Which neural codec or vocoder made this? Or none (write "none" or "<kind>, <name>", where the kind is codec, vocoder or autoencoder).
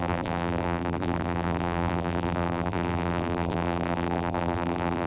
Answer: vocoder, BigVGAN v2